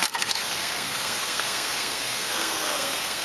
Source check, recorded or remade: remade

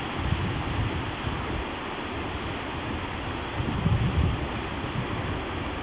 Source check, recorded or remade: recorded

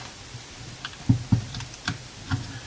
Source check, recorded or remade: recorded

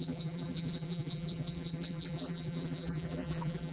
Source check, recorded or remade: remade